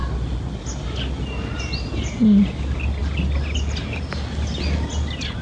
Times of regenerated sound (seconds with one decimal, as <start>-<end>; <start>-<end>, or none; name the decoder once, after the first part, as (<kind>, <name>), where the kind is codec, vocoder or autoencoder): none